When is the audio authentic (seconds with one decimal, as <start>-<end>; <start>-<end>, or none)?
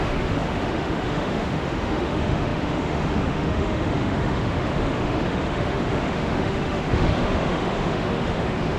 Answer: none